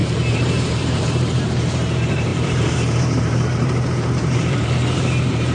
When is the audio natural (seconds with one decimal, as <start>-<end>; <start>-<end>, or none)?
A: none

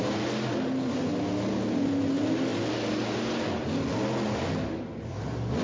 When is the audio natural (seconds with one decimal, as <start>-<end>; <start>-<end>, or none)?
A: 0.0-5.6

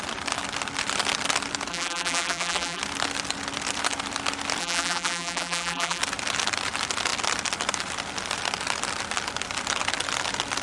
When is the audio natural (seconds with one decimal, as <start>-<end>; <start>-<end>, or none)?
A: 0.0-1.7; 2.8-4.6; 6.0-10.6

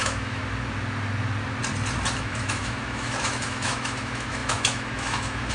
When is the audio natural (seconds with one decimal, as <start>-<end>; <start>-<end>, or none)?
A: 0.4-2.2